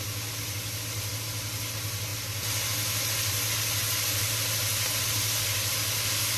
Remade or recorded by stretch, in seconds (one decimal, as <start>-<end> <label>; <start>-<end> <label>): 0.0-6.4 recorded